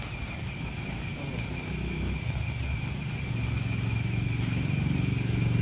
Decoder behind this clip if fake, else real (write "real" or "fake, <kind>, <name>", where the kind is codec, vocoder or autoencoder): real